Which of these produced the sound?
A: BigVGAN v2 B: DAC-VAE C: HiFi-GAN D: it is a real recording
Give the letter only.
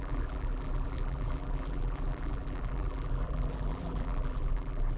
A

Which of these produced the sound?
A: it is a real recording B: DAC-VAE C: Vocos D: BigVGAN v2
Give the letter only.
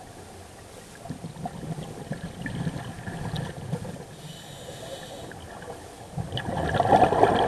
A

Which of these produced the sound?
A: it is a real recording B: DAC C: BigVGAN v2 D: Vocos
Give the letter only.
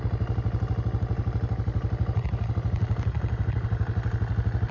A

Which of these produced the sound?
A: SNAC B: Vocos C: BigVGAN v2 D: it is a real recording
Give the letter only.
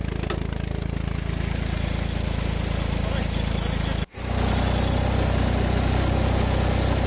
D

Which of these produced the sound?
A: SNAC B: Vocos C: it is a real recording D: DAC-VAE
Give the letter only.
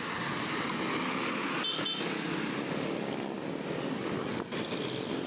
C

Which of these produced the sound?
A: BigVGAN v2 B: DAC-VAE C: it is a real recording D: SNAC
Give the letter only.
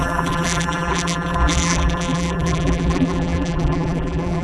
A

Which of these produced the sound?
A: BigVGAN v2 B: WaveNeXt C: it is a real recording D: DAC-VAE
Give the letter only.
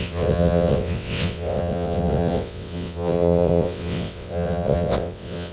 B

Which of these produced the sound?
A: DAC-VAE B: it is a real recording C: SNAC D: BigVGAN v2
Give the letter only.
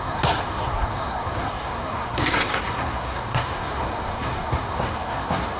C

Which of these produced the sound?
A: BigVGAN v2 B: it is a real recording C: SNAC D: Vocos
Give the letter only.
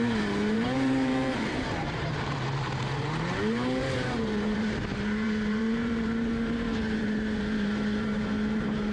A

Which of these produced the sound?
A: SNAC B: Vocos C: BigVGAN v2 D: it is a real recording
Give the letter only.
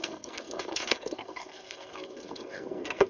A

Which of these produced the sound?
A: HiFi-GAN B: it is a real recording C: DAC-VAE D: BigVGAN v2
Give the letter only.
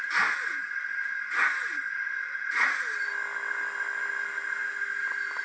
B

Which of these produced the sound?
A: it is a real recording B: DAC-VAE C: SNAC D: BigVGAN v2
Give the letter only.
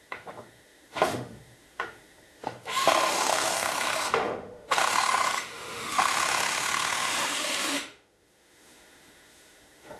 B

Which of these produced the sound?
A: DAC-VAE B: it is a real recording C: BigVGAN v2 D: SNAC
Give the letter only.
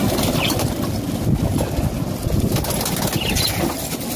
B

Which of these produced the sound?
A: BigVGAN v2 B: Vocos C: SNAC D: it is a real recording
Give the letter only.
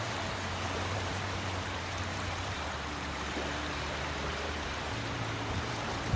A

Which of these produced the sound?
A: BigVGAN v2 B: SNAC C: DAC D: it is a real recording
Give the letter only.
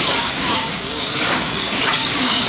C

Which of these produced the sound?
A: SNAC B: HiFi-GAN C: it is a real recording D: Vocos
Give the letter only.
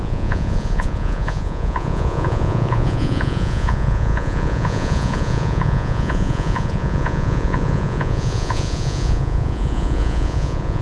D